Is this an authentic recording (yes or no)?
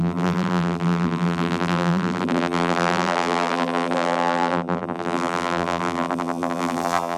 no